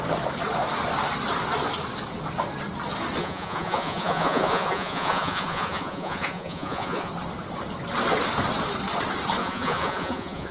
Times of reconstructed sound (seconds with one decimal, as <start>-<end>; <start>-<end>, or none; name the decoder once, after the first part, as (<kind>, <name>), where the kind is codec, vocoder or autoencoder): 3.2-7.1 (vocoder, Vocos); 9.4-10.5